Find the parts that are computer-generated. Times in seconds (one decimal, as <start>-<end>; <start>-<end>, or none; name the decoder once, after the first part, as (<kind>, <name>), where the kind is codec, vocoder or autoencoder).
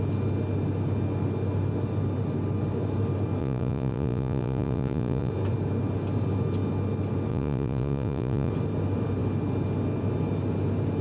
3.4-5.3 (vocoder, Vocos); 7.3-8.5